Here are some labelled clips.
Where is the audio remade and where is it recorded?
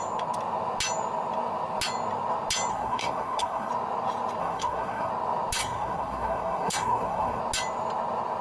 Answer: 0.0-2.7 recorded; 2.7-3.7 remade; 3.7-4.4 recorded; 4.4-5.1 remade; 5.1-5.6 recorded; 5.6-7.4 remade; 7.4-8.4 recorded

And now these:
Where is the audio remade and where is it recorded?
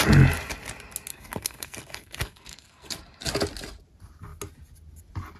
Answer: 0.0-1.1 recorded; 1.1-3.0 remade; 3.0-5.4 recorded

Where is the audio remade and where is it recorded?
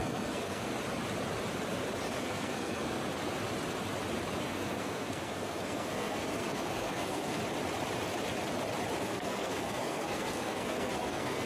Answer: 0.0-0.7 remade; 0.7-2.1 recorded; 2.1-3.0 remade; 3.0-4.4 recorded; 4.4-7.4 remade; 7.4-9.0 recorded; 9.0-11.5 remade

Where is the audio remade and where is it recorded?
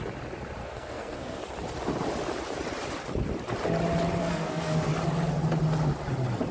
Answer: 0.0-0.6 recorded; 0.6-1.4 remade; 1.4-4.2 recorded; 4.2-4.9 remade; 4.9-6.5 recorded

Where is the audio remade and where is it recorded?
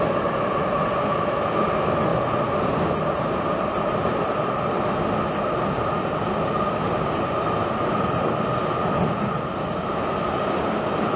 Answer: 0.0-11.2 recorded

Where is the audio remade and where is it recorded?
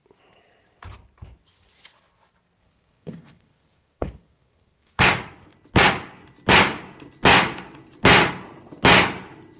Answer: 0.0-2.6 recorded; 2.6-5.0 remade; 5.0-9.6 recorded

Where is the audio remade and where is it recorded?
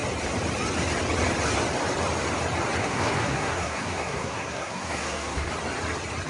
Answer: 0.0-2.8 recorded; 2.8-5.5 remade; 5.5-6.3 recorded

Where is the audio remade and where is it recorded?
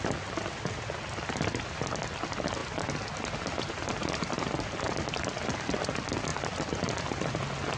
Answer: 0.0-7.8 recorded